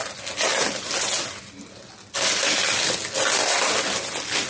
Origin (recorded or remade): recorded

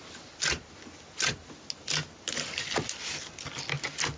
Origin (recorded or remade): recorded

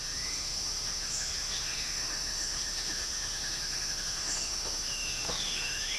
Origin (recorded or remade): remade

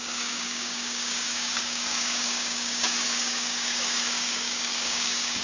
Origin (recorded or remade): remade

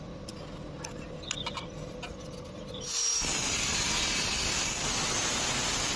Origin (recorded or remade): recorded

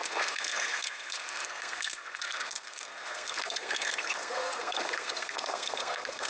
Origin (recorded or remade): remade